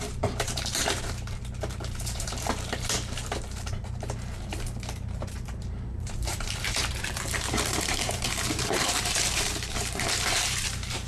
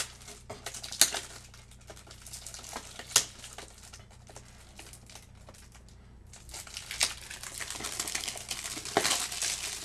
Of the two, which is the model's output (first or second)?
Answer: first